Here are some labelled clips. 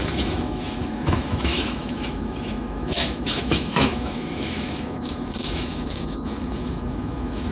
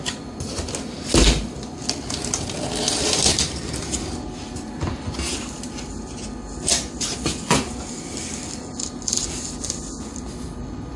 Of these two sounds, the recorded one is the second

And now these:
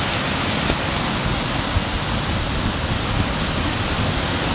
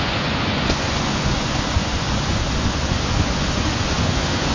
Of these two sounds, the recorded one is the first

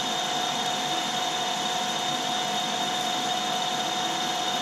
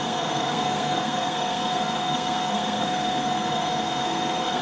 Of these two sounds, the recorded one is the first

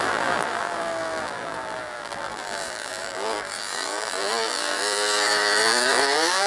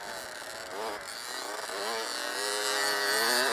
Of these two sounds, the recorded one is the second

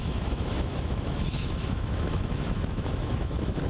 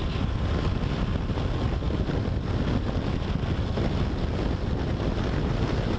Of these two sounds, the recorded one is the second